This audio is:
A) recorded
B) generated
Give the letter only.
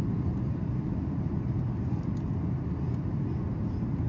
A